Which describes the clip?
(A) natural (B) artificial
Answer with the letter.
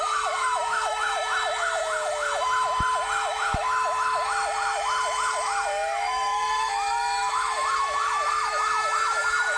B